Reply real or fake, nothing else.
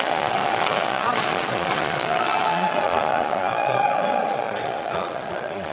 fake